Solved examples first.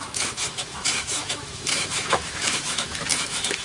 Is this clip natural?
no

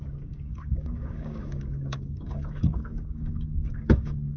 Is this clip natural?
no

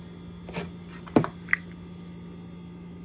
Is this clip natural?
yes